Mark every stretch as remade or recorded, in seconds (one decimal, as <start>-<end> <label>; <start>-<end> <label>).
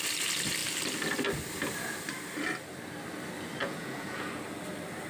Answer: 0.0-3.6 recorded; 3.6-4.3 remade; 4.3-5.1 recorded